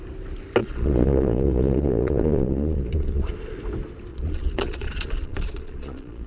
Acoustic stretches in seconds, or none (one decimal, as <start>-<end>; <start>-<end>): 0.0-0.6; 3.3-4.1